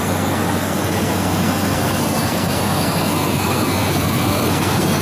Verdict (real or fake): fake